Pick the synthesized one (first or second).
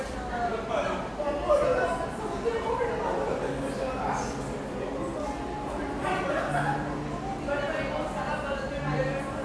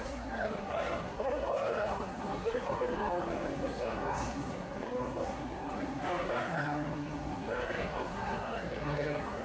second